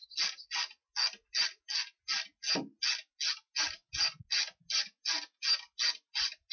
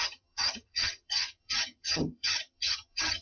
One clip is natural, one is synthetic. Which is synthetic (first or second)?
second